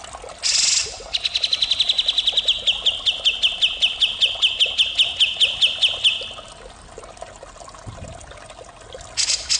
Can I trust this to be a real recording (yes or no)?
yes